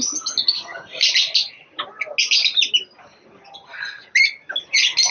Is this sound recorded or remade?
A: recorded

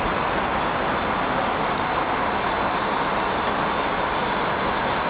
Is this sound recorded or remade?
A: recorded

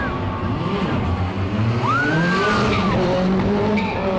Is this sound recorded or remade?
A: recorded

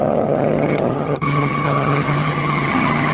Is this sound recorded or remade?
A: remade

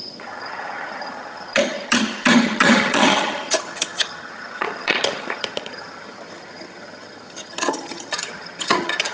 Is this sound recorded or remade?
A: remade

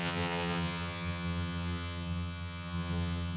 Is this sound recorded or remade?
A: remade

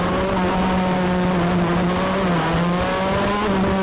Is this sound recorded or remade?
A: recorded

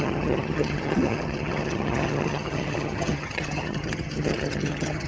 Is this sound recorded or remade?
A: remade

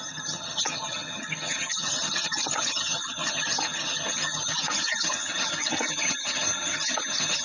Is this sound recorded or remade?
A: remade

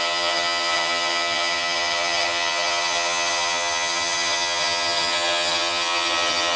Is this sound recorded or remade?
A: remade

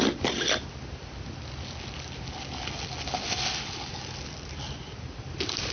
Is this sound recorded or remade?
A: recorded